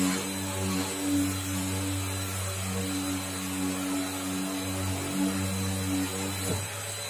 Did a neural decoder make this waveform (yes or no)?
no